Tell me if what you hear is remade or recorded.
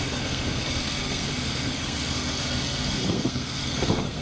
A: remade